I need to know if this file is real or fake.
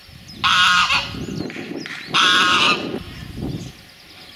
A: real